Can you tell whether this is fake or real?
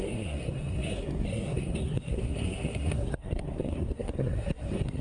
fake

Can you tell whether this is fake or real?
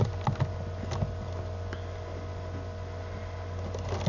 real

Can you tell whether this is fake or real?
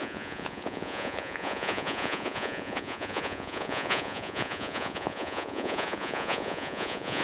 fake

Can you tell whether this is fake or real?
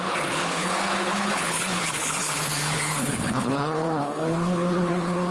fake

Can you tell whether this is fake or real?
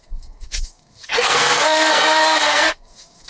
fake